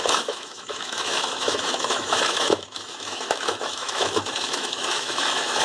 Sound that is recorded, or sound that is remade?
remade